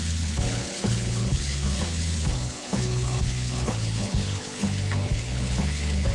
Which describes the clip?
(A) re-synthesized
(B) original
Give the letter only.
A